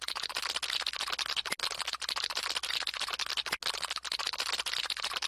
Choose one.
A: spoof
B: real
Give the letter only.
B